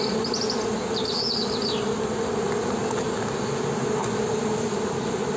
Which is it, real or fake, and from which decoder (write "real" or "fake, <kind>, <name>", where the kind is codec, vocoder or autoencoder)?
real